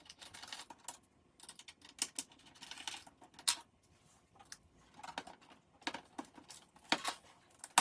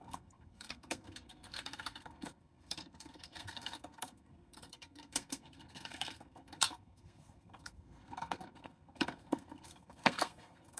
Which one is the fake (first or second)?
second